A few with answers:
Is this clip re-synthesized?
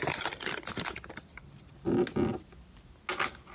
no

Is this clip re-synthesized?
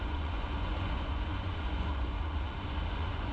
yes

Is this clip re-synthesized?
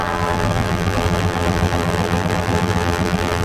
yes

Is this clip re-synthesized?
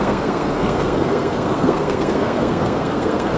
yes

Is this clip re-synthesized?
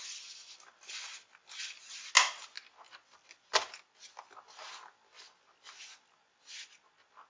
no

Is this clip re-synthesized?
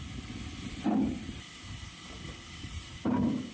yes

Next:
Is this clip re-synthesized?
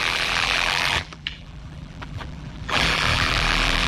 yes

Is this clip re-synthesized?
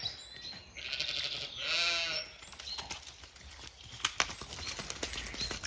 no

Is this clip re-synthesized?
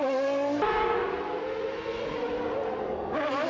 no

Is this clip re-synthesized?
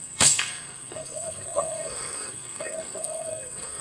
yes